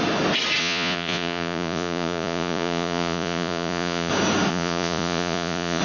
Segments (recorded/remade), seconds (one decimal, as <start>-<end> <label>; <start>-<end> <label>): 0.0-0.6 recorded; 0.6-4.1 remade; 4.1-4.5 recorded; 4.5-5.8 remade